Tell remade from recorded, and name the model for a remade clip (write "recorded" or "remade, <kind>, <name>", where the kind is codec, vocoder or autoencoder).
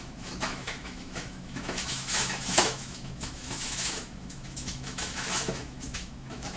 remade, autoencoder, DAC-VAE